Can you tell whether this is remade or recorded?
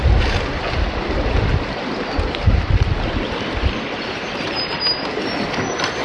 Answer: recorded